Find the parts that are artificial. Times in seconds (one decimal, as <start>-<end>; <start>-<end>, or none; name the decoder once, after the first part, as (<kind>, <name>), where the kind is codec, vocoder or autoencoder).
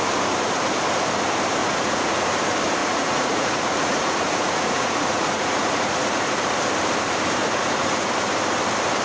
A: 1.6-2.2 (vocoder, Vocos); 2.8-6.3; 7.4-8.1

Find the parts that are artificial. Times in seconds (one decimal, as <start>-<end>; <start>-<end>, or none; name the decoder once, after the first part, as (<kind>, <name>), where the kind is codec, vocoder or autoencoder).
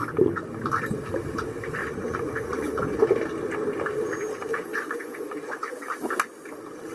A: 1.8-3.0 (vocoder, Vocos); 4.5-5.6